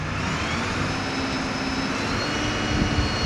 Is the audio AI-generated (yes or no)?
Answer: no